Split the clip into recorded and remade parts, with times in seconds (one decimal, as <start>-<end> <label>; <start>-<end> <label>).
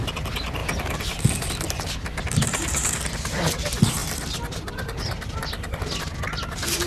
0.0-0.6 recorded; 0.6-1.9 remade; 1.9-4.0 recorded; 4.0-5.8 remade; 5.8-6.9 recorded